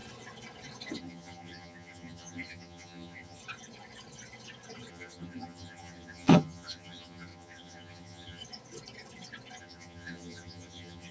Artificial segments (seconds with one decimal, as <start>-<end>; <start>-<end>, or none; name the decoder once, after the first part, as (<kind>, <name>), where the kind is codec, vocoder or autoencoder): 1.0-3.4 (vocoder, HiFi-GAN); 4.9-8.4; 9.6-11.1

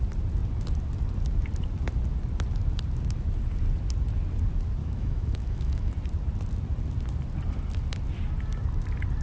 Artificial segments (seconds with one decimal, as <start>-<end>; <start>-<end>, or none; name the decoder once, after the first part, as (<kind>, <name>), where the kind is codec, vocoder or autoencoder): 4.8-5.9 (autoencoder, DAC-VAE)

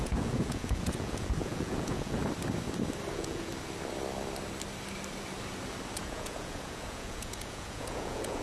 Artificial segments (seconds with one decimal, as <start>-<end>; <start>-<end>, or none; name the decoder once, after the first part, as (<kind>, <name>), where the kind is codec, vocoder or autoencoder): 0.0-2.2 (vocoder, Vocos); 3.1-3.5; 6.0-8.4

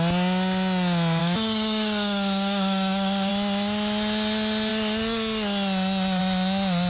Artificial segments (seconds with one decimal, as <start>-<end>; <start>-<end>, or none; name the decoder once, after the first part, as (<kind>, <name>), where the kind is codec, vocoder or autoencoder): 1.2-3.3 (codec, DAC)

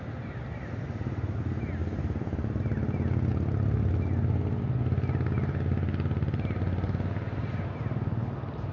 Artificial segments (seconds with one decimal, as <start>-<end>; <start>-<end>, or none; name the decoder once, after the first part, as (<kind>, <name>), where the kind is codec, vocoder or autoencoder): none